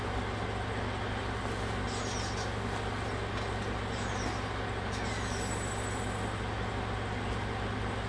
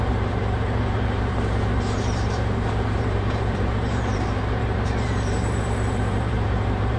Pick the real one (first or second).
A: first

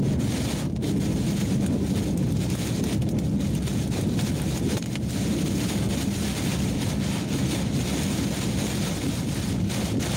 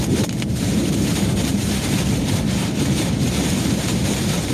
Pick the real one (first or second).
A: first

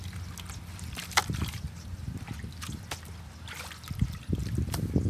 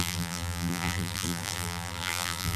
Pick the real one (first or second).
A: first